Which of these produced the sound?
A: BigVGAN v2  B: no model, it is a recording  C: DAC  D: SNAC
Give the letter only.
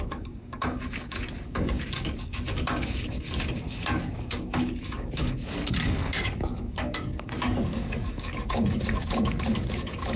C